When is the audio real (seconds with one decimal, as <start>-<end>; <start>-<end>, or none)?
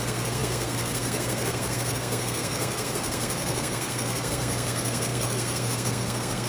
none